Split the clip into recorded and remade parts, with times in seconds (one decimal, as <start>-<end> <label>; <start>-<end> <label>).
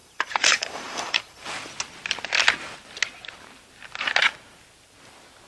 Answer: 0.0-1.5 remade; 1.5-5.5 recorded